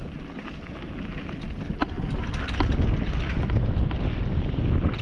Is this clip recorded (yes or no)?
yes